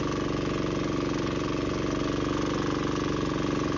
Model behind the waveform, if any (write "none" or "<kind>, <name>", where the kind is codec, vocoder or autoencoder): none